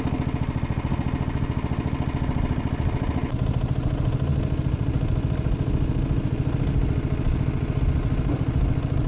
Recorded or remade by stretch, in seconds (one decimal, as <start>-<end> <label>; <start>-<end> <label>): 0.0-9.1 recorded